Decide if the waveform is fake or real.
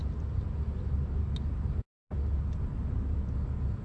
real